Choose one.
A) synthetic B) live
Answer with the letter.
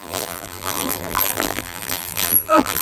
A